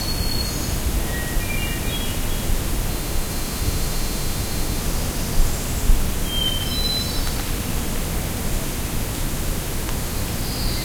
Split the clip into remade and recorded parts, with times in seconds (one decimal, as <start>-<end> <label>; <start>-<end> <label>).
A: 0.0-2.9 recorded; 2.9-4.8 remade; 4.8-10.8 recorded